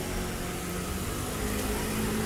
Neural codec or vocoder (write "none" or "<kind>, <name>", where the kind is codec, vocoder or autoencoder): none